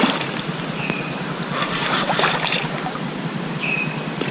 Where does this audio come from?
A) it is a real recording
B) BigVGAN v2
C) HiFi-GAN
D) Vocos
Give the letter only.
B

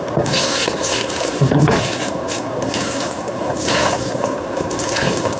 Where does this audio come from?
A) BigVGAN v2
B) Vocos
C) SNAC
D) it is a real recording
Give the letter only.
C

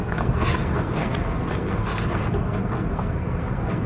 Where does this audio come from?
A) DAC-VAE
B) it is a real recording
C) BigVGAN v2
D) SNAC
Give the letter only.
D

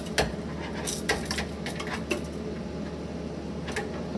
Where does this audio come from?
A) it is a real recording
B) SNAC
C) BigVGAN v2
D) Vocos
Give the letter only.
A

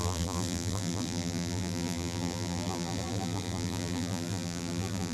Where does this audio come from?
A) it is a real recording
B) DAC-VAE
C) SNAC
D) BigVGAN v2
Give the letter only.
D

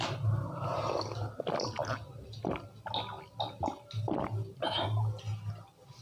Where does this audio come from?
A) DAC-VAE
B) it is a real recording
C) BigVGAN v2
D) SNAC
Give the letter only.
B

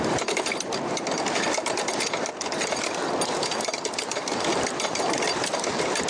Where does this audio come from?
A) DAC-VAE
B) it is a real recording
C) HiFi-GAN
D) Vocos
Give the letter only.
B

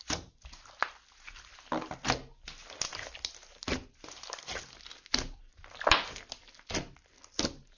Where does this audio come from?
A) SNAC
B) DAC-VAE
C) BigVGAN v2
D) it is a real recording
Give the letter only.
D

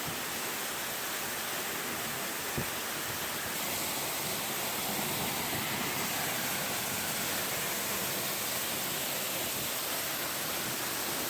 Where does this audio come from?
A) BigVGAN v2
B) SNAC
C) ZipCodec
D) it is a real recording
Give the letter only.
D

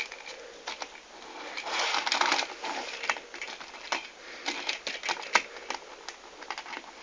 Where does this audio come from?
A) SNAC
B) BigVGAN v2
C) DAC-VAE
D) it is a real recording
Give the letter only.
D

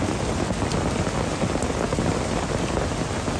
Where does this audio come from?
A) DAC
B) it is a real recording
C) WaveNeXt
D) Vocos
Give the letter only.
B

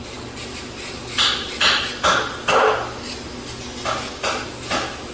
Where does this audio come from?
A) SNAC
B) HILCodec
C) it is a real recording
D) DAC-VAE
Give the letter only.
C